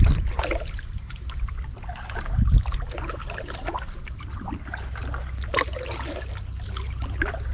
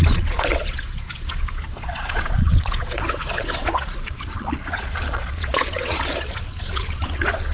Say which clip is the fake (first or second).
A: second